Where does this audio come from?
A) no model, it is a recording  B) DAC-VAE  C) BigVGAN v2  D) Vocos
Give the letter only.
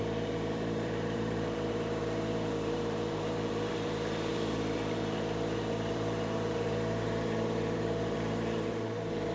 C